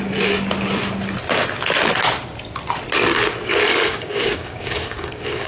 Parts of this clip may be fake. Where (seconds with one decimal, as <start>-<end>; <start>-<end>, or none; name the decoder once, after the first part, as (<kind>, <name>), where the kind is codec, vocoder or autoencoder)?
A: 3.7-5.5 (codec, DAC)